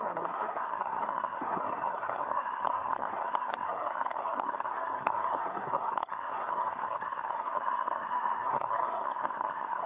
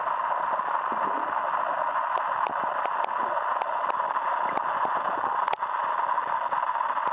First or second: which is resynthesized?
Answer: first